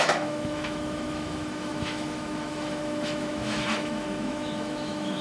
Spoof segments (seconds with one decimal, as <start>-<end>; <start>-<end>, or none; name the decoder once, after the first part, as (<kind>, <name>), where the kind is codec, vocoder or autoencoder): 0.0-5.2 (autoencoder, DAC-VAE)